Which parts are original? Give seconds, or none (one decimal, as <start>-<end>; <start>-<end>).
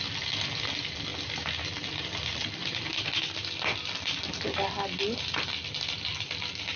0.0-6.8